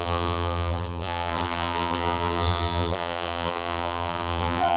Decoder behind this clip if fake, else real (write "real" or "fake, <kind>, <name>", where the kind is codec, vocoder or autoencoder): fake, vocoder, BigVGAN v2